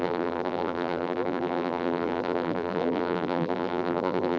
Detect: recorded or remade remade